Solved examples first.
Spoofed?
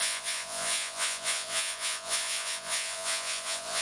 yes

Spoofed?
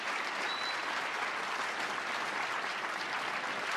no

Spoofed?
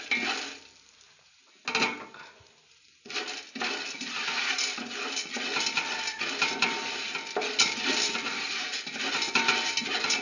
no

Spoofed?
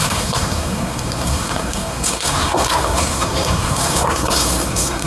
yes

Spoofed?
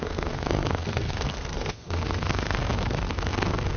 yes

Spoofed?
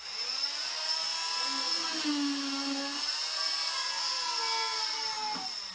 no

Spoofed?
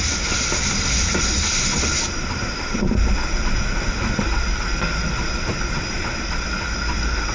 no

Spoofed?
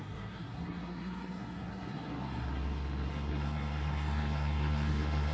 yes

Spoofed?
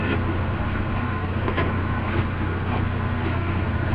yes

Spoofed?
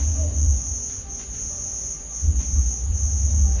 yes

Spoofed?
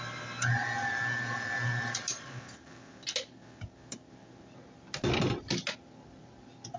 no